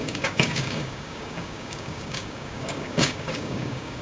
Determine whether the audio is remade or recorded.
remade